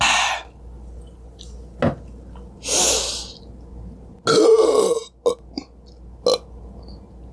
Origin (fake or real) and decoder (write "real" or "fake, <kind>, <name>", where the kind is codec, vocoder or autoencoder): real